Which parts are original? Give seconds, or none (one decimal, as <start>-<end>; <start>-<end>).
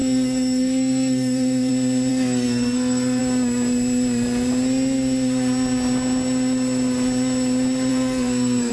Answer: 1.7-2.1; 3.2-7.9